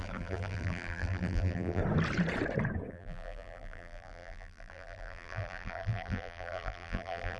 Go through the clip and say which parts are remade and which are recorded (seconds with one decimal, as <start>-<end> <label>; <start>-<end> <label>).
0.0-1.8 remade; 1.8-2.9 recorded; 2.9-7.4 remade